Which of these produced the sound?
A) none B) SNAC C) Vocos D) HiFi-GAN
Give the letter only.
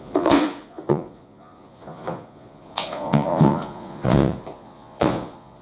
C